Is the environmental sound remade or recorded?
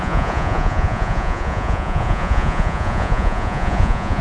remade